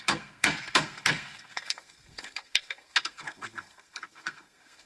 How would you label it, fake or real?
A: fake